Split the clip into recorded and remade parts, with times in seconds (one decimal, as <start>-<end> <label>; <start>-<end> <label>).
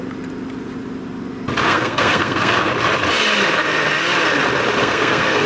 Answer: 0.0-1.6 recorded; 1.6-2.7 remade; 2.7-4.8 recorded; 4.8-5.5 remade